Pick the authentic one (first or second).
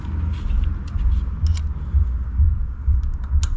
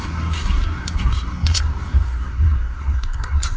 first